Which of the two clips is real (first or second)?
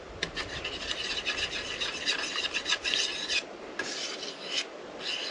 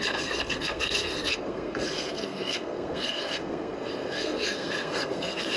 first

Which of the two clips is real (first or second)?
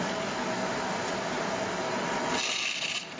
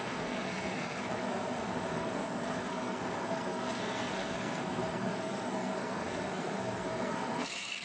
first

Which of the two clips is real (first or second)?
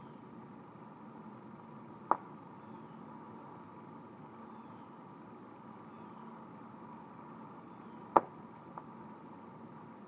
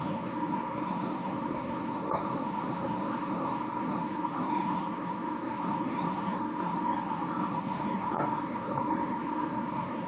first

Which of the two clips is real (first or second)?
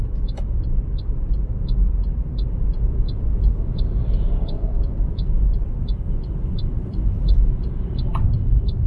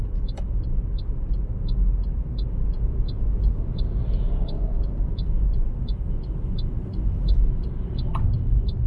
second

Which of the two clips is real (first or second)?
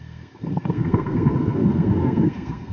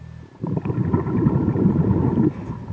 second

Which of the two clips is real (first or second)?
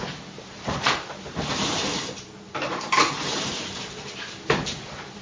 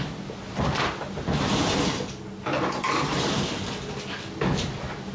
second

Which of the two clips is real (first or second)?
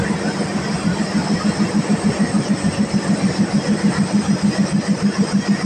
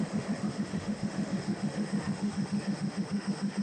first